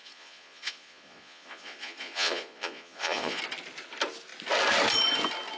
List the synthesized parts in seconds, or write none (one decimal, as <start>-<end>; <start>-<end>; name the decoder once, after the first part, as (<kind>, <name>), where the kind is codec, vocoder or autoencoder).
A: 0.0-3.4 (vocoder, Vocos)